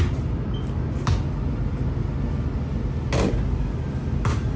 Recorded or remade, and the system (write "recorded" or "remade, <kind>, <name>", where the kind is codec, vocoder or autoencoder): recorded